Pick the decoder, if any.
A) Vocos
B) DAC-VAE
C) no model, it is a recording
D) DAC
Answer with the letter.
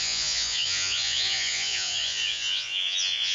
A